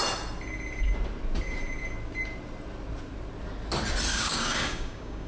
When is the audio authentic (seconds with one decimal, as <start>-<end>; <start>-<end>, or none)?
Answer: 0.0-4.1